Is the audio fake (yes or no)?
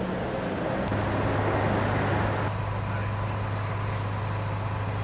no